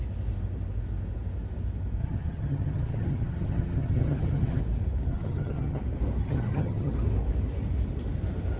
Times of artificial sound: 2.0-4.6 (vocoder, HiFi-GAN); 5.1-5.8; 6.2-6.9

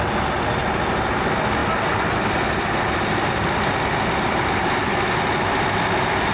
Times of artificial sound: none

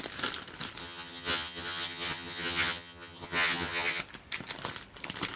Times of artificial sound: 0.8-4.0 (vocoder, HiFi-GAN)

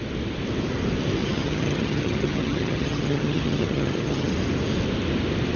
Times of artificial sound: 1.2-4.3 (vocoder, HiFi-GAN)

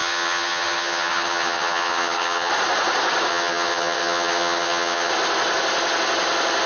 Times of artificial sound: 0.0-2.5 (vocoder, HiFi-GAN); 3.3-5.1

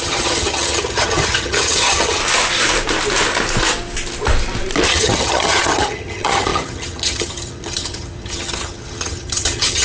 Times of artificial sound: 0.0-2.2 (vocoder, HiFi-GAN); 4.9-9.8

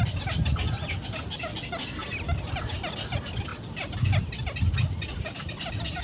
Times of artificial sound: none